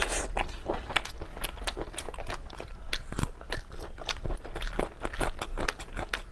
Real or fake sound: real